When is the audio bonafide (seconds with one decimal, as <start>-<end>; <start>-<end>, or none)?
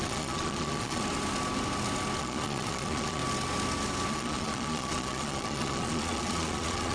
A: 1.0-2.2; 3.2-4.1